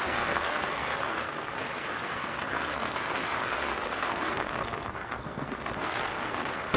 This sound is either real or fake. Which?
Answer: fake